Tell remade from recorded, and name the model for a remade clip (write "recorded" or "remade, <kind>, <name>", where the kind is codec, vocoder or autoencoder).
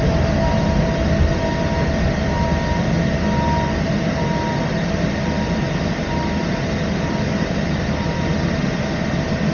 recorded